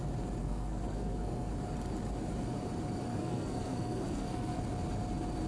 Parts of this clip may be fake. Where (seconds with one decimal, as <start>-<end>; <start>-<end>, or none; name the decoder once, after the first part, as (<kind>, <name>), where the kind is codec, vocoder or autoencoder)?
0.4-1.5 (codec, SNAC); 3.1-4.6